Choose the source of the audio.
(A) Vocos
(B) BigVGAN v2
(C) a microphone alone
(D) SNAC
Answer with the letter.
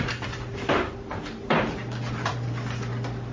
B